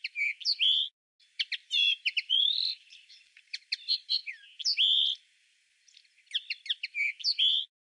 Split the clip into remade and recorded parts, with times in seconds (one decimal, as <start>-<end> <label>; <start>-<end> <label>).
0.0-1.6 recorded; 1.6-3.6 remade; 3.6-7.9 recorded